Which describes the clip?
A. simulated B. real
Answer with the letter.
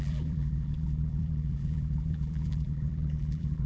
A